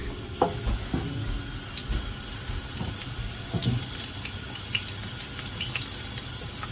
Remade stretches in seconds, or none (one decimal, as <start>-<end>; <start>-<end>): none